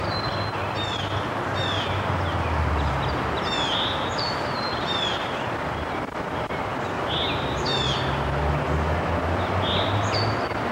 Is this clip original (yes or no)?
yes